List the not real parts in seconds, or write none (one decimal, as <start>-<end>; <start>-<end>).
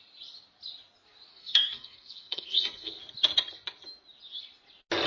1.3-3.0